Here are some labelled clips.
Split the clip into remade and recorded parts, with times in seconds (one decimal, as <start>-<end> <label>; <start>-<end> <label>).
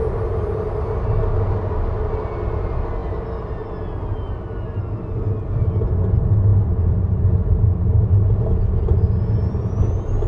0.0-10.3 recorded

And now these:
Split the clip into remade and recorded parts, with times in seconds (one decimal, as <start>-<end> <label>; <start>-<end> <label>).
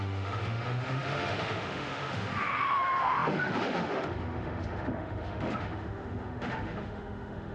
0.0-7.5 remade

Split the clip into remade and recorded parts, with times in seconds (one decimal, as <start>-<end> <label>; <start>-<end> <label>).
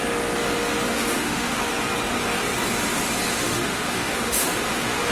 0.0-0.9 recorded; 0.9-1.6 remade; 1.6-3.3 recorded; 3.3-5.1 remade